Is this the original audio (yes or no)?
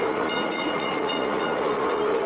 no